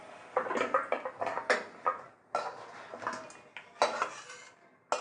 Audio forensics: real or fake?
real